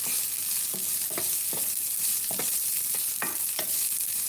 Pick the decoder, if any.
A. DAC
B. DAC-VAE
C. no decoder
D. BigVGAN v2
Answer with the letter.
C